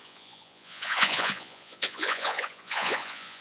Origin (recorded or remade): remade